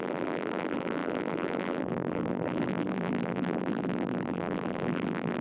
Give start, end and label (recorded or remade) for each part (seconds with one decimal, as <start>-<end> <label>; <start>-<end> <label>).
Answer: 0.0-5.4 remade